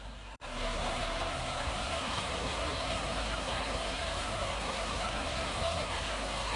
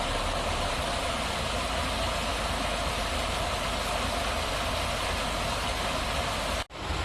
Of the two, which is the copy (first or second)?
first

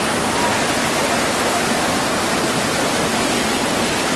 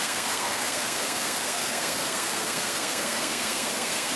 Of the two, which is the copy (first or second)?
second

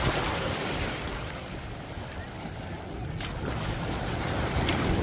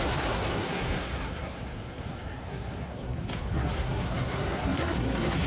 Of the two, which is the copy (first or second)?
second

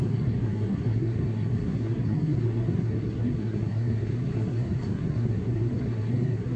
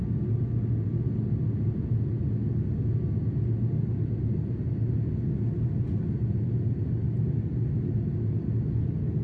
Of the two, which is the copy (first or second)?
first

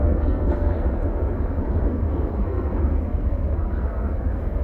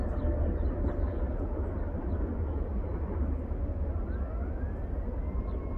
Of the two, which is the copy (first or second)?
first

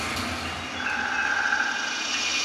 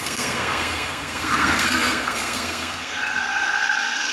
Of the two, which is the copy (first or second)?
second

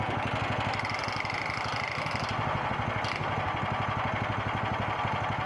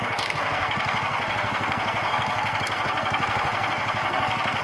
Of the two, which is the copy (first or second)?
second